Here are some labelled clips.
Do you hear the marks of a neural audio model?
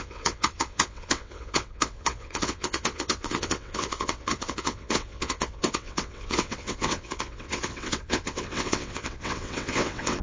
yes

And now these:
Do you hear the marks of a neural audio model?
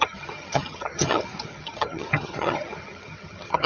yes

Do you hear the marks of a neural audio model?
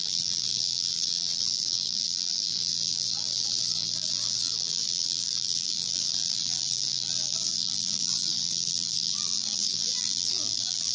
yes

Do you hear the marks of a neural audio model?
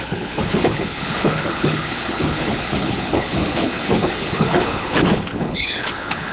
yes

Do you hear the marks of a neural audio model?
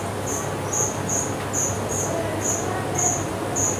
no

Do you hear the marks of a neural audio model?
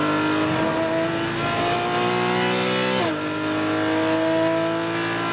no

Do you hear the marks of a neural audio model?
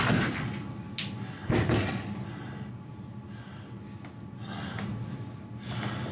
no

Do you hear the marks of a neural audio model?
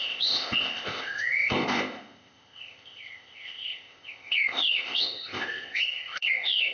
yes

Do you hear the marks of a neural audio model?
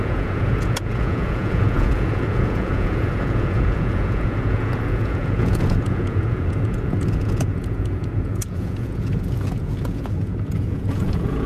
yes